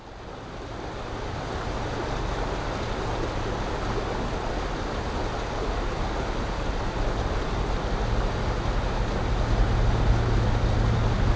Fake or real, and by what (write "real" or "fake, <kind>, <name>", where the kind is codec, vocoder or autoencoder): real